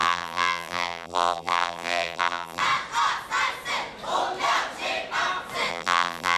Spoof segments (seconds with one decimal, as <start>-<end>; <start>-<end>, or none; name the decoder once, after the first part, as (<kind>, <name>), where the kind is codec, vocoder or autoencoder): 0.0-2.6 (vocoder, BigVGAN v2); 5.7-6.4